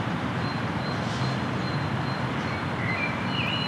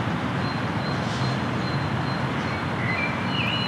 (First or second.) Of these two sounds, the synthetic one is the first